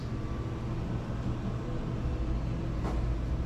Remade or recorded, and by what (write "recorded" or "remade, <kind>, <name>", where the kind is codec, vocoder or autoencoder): recorded